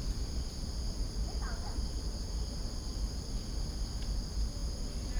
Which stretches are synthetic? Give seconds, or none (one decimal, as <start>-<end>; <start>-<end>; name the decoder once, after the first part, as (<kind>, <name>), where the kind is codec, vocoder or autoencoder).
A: none